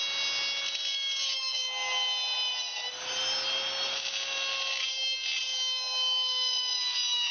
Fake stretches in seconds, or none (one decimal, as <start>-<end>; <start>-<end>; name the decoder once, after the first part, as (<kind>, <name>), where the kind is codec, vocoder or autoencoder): none